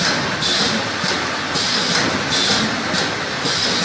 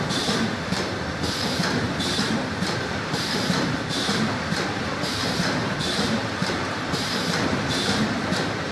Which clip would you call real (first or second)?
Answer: first